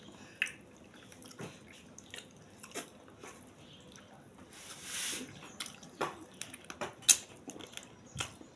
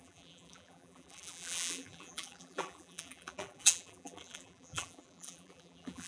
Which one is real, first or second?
first